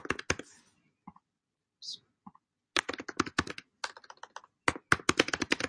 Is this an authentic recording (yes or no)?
yes